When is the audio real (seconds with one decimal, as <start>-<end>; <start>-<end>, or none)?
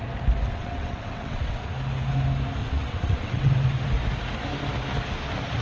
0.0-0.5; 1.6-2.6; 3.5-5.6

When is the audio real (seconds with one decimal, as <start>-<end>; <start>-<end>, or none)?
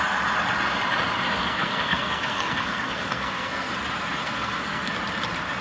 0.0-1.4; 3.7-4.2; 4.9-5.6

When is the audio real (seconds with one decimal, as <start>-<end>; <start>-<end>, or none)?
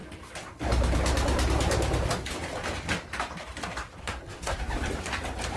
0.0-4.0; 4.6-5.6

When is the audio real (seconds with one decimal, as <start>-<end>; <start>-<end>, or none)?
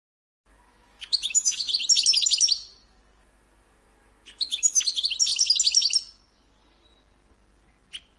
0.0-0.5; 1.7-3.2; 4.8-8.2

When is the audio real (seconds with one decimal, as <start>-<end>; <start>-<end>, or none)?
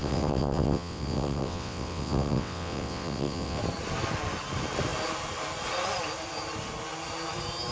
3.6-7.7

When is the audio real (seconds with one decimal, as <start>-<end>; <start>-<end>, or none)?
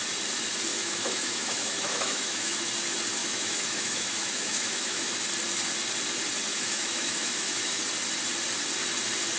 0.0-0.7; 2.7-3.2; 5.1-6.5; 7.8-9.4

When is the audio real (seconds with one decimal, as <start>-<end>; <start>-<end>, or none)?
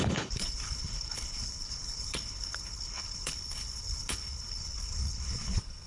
none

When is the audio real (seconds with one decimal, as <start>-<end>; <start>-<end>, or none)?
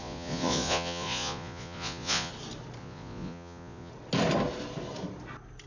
2.3-2.8; 3.9-5.7